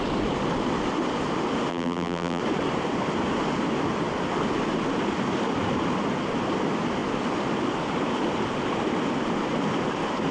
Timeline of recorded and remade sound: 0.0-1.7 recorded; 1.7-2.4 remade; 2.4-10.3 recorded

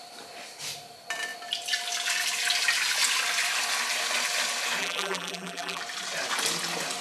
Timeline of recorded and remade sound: 0.0-4.8 recorded; 4.8-5.8 remade; 5.8-7.0 recorded

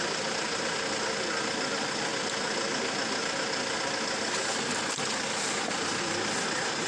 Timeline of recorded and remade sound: 0.0-6.9 recorded

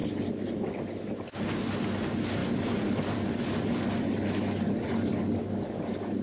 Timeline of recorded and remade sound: 0.0-2.4 recorded; 2.4-3.8 remade; 3.8-6.2 recorded